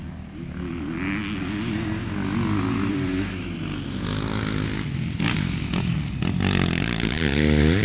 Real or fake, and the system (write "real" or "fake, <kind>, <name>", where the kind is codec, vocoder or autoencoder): real